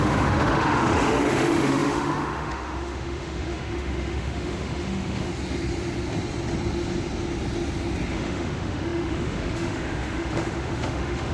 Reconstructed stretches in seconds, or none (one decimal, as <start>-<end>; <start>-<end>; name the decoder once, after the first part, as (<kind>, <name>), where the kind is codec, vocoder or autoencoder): 0.0-5.3 (autoencoder, DAC-VAE); 8.1-11.3